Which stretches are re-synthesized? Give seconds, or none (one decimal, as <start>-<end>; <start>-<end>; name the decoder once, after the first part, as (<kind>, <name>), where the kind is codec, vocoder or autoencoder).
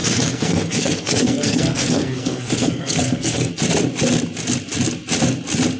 0.0-3.5 (codec, SNAC)